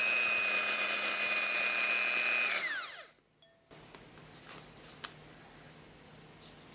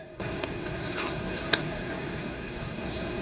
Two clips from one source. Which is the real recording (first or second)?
first